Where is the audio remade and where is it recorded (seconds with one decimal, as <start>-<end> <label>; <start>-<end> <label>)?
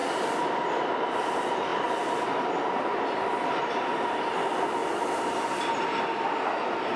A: 0.0-7.0 recorded